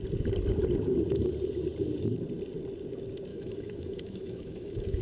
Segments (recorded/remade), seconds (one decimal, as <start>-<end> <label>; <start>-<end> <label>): 0.0-3.3 recorded; 3.3-5.0 remade